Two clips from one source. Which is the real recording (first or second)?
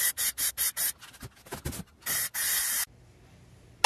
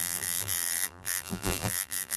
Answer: first